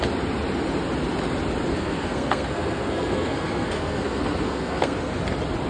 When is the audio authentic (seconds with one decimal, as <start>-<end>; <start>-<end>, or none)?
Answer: 0.0-1.7; 5.1-5.7